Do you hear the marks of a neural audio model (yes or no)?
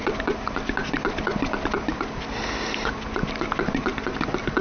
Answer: no